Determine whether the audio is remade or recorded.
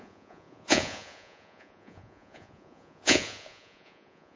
remade